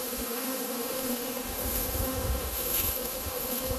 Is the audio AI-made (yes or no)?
yes